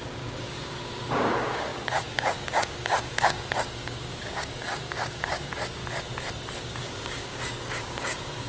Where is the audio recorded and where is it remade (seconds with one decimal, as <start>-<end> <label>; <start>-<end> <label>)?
0.0-5.8 remade; 5.8-6.5 recorded; 6.5-8.5 remade